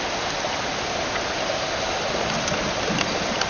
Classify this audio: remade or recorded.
recorded